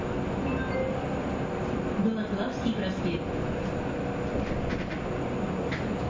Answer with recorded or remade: recorded